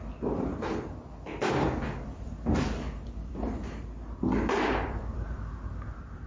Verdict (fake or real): fake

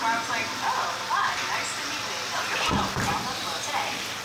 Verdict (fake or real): real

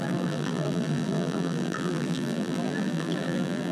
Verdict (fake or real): fake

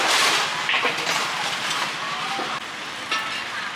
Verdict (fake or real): fake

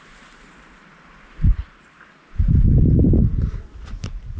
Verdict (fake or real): fake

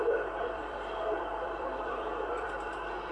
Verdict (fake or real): fake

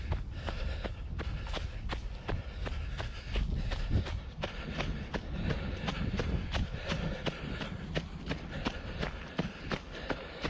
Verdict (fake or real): real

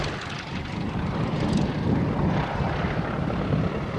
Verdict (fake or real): fake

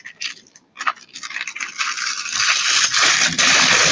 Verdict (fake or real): fake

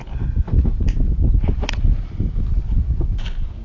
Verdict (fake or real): real